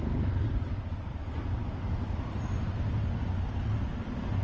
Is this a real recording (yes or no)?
yes